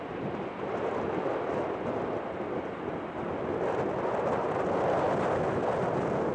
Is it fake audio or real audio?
real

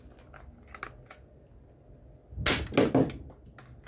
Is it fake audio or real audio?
real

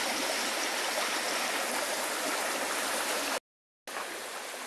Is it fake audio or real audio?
real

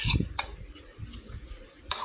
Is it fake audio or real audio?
fake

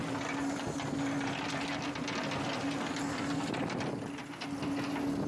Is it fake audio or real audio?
real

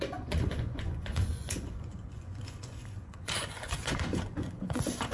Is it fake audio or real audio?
fake